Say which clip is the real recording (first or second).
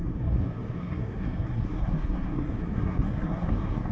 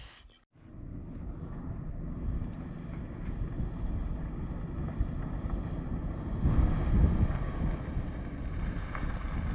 second